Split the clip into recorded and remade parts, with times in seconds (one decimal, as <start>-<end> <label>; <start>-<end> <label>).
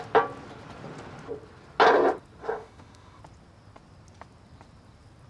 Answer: 0.0-2.4 recorded; 2.4-3.2 remade; 3.2-5.3 recorded